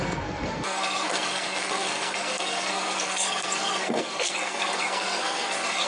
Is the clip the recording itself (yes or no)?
no